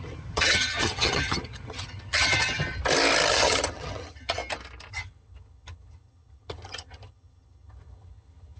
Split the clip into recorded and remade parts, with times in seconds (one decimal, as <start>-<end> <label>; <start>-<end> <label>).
0.0-2.6 remade; 2.6-3.3 recorded; 3.3-4.4 remade; 4.4-4.9 recorded; 4.9-8.6 remade